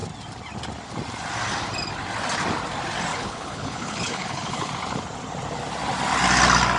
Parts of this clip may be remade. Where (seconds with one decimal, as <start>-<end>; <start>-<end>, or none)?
3.1-4.7